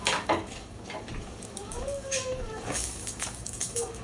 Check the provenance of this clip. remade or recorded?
remade